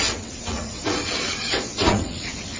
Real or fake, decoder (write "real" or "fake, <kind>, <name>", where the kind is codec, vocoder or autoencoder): fake, vocoder, WaveNeXt